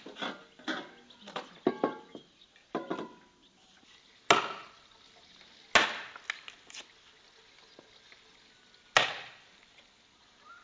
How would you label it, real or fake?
real